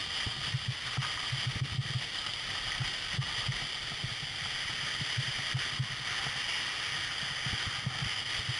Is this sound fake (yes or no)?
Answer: no